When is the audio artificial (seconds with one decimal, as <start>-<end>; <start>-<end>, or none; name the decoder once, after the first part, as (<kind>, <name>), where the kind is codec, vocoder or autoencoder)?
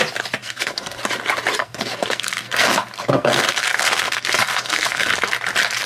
0.4-1.0 (codec, SNAC); 1.6-5.1